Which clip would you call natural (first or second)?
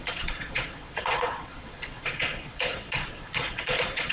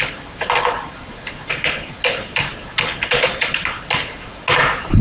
second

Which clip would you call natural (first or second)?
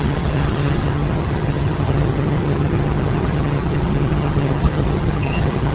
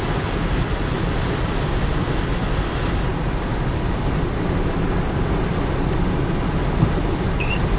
second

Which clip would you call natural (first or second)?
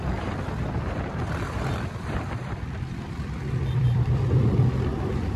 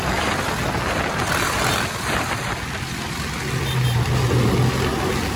second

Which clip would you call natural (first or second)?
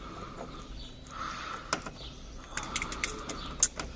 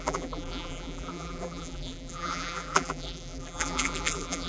first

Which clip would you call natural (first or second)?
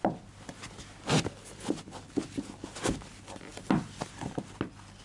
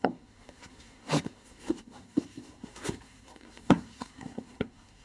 first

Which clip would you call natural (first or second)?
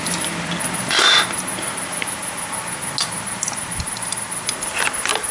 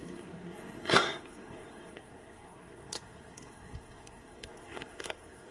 first